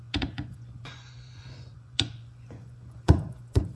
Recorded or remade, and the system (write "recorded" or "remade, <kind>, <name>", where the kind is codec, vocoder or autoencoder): remade, vocoder, Vocos